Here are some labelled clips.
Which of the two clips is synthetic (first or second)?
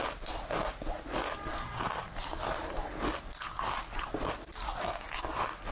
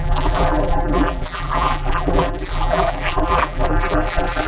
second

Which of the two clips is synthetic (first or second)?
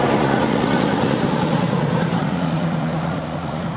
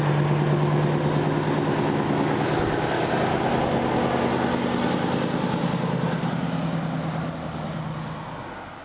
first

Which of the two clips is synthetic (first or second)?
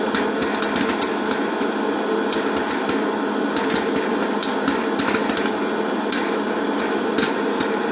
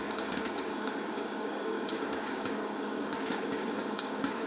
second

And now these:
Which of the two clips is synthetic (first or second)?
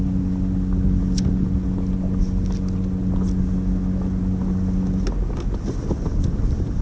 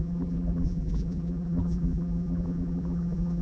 second